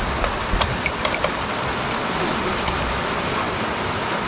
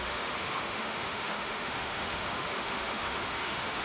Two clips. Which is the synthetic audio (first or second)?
second